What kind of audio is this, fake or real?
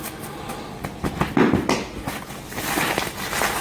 real